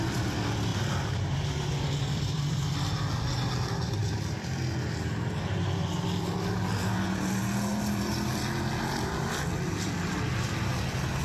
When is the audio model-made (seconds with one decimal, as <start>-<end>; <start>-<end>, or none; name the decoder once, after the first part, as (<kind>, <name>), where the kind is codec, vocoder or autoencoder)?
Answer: 0.7-3.2 (vocoder, BigVGAN v2); 4.0-4.6; 7.7-10.7